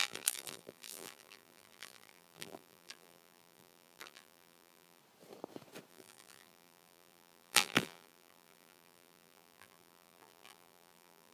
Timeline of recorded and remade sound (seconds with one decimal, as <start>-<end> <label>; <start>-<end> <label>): 0.0-5.0 remade; 5.0-5.9 recorded; 5.9-11.3 remade